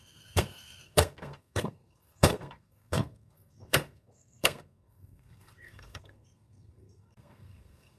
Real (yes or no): no